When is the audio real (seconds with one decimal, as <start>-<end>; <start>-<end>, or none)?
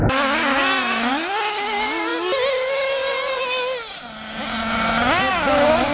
0.0-5.9